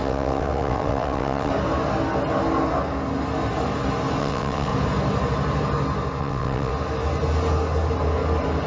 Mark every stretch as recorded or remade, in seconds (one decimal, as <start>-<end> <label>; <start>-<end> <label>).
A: 0.0-1.5 remade; 1.5-4.2 recorded; 4.2-4.7 remade; 4.7-6.2 recorded; 6.2-6.7 remade; 6.7-8.7 recorded